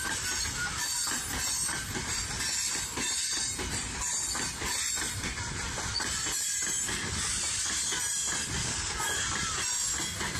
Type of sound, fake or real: real